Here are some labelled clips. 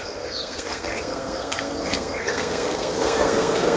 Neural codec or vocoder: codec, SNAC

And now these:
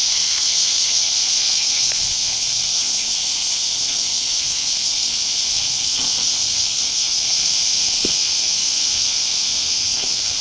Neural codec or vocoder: codec, SNAC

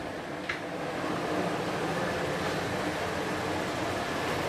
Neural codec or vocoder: none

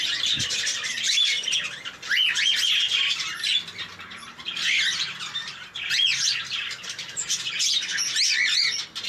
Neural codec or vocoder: none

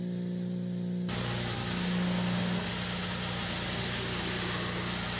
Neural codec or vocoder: none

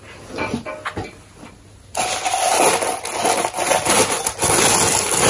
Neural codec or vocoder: none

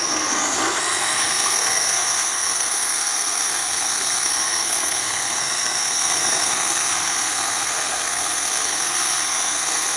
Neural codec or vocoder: codec, SNAC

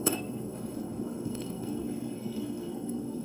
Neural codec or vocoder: codec, SNAC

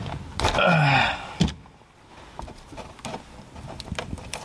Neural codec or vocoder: none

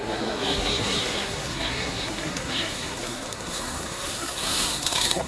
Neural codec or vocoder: codec, SNAC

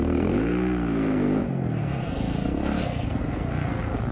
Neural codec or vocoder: codec, SNAC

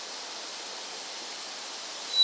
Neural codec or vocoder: none